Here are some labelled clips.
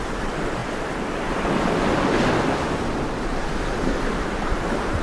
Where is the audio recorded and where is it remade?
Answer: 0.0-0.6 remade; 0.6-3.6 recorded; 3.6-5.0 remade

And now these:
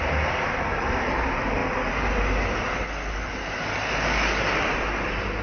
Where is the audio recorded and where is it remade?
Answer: 0.0-1.6 remade; 1.6-4.4 recorded; 4.4-5.4 remade